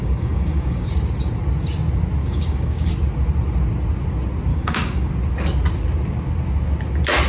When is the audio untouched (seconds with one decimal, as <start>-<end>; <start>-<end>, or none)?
0.9-2.2; 2.9-4.5; 5.1-7.3